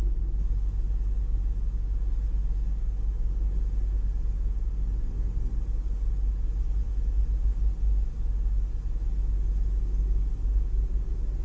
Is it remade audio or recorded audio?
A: recorded